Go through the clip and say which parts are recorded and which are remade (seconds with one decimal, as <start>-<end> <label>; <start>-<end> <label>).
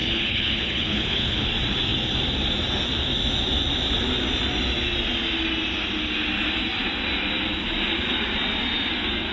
0.0-1.5 remade; 1.5-9.3 recorded